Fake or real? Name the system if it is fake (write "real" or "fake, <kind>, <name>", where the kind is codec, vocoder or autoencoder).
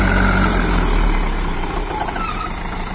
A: fake, vocoder, BigVGAN v2